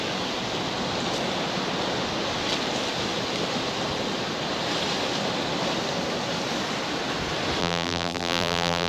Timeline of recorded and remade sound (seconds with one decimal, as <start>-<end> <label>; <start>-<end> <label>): 0.0-7.6 recorded; 7.6-8.9 remade